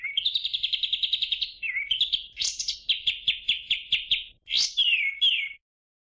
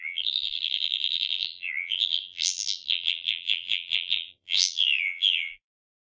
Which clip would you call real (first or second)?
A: first